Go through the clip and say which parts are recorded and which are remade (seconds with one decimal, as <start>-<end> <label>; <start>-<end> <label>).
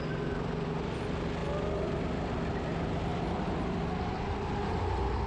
0.0-5.3 recorded